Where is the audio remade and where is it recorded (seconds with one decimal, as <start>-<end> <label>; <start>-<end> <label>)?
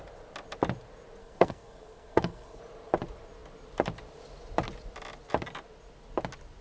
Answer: 0.0-1.2 recorded; 1.2-2.6 remade; 2.6-6.6 recorded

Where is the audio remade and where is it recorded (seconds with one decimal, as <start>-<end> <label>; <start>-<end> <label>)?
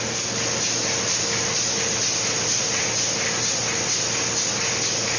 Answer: 0.0-5.2 recorded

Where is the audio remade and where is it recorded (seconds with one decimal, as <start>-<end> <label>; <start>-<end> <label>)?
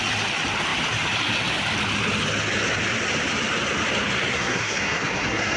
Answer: 0.0-4.3 recorded; 4.3-5.6 remade